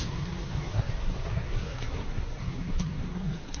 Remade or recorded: remade